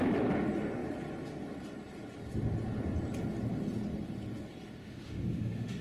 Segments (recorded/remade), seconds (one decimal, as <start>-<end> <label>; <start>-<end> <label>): 0.0-4.8 recorded; 4.8-5.8 remade